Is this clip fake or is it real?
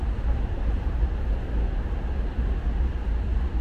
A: real